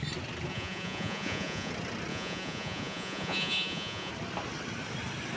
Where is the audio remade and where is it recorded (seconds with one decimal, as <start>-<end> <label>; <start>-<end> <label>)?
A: 0.0-0.5 recorded; 0.5-1.7 remade; 1.7-2.1 recorded; 2.1-4.1 remade; 4.1-5.4 recorded